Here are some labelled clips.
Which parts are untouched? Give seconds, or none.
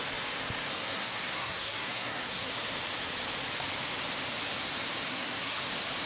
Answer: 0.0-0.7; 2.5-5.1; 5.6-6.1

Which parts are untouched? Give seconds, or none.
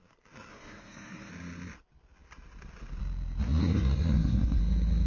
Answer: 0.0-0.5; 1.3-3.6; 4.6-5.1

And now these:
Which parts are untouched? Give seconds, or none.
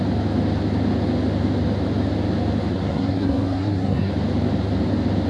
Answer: 0.0-2.7; 4.1-5.3